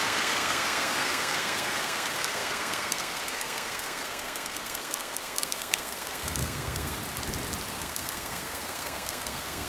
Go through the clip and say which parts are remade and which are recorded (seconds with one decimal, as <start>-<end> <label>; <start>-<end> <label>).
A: 0.0-7.0 remade; 7.0-7.7 recorded; 7.7-9.7 remade